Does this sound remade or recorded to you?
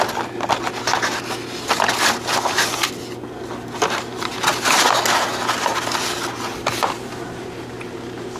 recorded